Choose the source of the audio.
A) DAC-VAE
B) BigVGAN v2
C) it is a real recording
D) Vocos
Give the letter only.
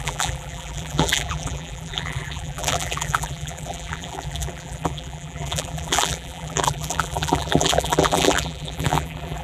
B